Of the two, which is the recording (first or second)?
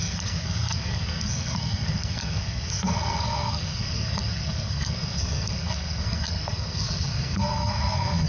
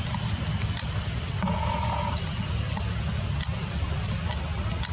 second